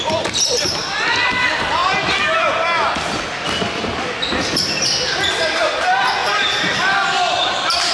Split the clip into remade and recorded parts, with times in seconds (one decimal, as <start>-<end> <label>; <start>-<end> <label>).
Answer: 0.0-7.9 recorded